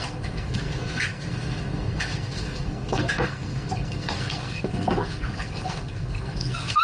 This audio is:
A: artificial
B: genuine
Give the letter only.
A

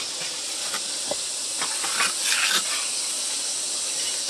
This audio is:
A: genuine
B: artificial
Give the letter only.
A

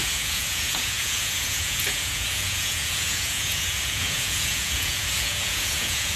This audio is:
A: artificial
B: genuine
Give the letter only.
A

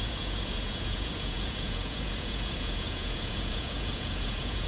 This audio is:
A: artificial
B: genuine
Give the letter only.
A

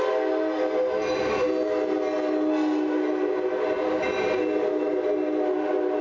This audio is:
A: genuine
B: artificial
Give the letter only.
A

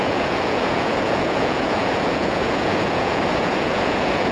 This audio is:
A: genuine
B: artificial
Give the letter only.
B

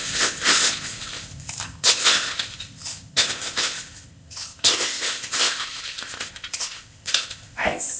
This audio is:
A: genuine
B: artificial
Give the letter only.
B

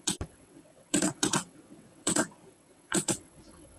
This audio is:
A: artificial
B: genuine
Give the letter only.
A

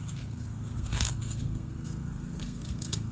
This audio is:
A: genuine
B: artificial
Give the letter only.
B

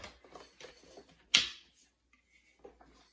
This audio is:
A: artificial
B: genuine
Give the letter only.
B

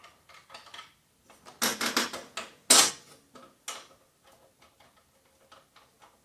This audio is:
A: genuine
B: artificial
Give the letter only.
A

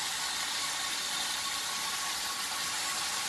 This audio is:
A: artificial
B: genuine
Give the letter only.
B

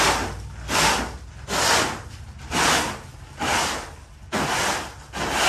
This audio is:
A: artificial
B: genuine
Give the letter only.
B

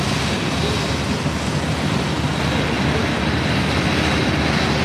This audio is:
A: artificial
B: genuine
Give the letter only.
B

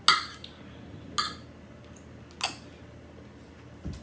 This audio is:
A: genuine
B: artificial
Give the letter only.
A